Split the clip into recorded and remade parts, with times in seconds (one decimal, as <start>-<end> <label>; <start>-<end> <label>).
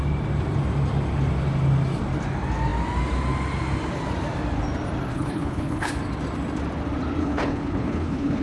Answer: 0.0-5.1 recorded; 5.1-5.9 remade; 5.9-7.2 recorded; 7.2-8.4 remade